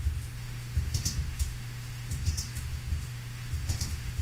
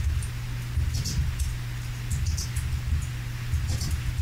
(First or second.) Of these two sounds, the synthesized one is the first